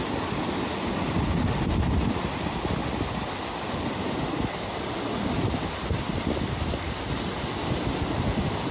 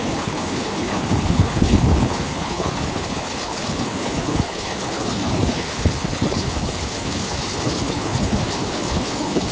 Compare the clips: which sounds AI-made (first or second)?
second